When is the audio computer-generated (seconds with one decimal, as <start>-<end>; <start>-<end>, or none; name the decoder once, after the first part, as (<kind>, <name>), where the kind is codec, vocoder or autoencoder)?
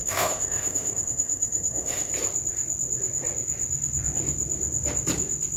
0.0-2.1 (autoencoder, DAC-VAE)